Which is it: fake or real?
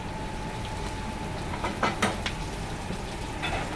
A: real